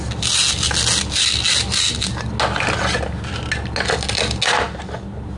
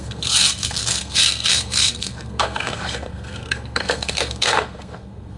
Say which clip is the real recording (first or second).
first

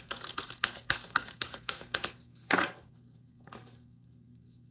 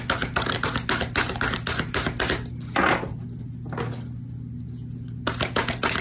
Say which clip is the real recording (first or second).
second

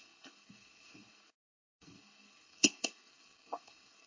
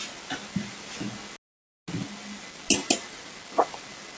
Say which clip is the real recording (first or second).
second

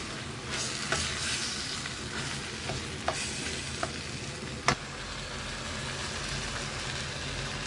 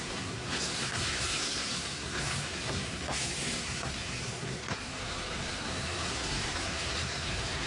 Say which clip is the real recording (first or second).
first